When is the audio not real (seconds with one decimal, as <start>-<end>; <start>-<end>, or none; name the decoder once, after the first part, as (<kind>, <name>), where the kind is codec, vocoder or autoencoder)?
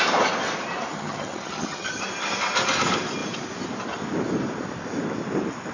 0.9-2.0 (vocoder, HiFi-GAN)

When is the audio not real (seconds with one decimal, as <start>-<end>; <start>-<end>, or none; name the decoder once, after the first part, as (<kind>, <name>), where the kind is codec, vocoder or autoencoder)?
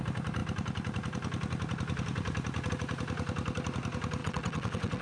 4.2-5.0 (vocoder, WaveNeXt)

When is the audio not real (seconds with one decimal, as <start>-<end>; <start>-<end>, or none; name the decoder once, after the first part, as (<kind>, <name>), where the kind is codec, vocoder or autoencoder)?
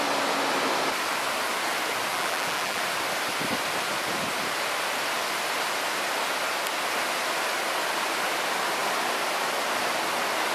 2.1-2.8 (vocoder, BigVGAN v2)